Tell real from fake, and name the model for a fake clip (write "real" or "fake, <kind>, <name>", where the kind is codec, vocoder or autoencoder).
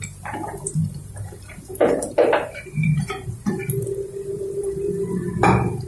fake, vocoder, BigVGAN v2